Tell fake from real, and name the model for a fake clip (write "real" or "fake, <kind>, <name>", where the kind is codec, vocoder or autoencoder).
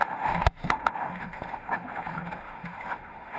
fake, autoencoder, DAC-VAE